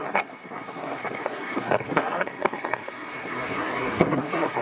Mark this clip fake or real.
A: fake